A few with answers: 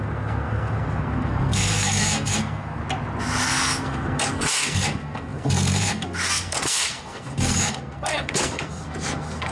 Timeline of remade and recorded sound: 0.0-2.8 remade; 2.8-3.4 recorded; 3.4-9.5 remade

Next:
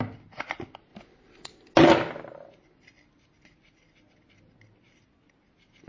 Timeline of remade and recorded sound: 0.0-5.9 recorded

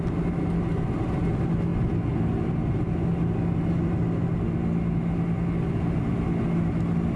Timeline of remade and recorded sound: 0.0-7.2 recorded

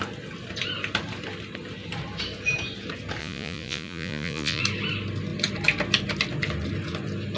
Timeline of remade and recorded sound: 0.0-3.2 recorded; 3.2-4.6 remade; 4.6-7.4 recorded

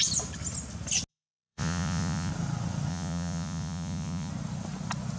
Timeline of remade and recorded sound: 0.0-1.1 recorded; 1.1-2.3 remade; 2.3-2.9 recorded; 2.9-4.3 remade; 4.3-5.2 recorded

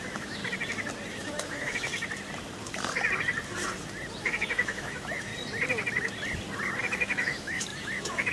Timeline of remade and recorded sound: 0.0-0.4 remade; 0.4-1.1 recorded; 1.1-1.9 remade; 1.9-4.2 recorded; 4.2-5.3 remade; 5.3-6.8 recorded; 6.8-8.3 remade

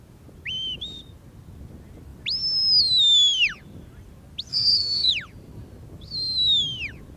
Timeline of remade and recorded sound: 0.0-4.5 recorded; 4.5-5.1 remade; 5.1-7.2 recorded

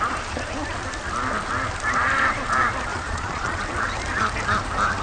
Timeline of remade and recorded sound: 0.0-2.9 recorded; 2.9-3.6 remade; 3.6-5.0 recorded